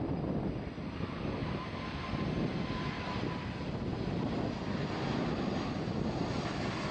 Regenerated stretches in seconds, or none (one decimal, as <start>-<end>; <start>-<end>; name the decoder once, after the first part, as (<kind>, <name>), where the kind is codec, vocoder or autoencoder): 0.0-6.9 (vocoder, BigVGAN v2)